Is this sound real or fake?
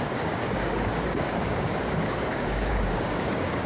fake